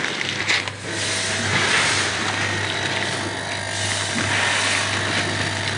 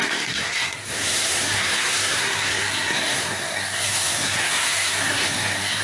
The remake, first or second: second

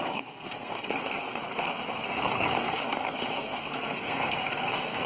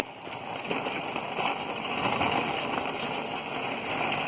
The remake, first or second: first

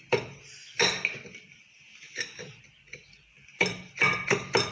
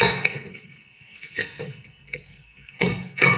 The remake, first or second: second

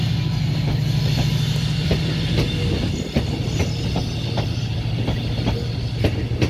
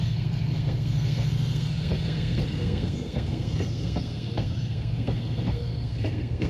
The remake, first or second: second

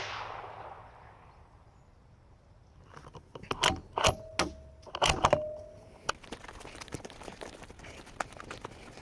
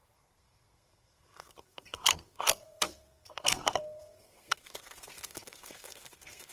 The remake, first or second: second